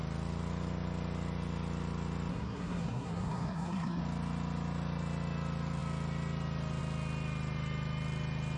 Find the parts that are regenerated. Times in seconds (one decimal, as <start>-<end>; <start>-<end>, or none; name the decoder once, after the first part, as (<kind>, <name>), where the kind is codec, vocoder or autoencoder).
2.3-4.0 (codec, SNAC)